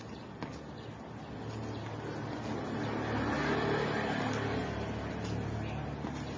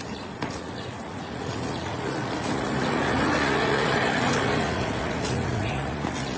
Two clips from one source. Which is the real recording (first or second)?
first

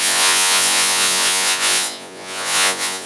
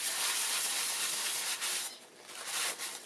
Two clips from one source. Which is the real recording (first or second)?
second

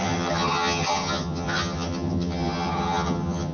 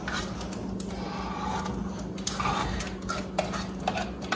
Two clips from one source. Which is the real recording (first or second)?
second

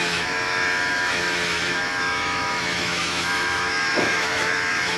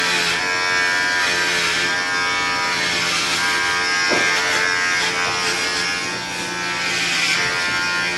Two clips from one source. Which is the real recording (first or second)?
second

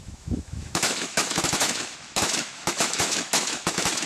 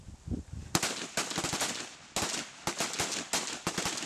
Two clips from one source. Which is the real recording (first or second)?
second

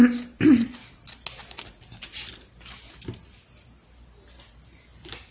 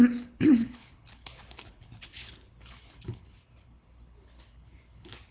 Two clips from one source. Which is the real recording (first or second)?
first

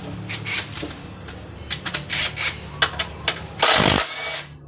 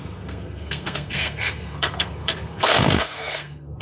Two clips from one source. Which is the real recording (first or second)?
first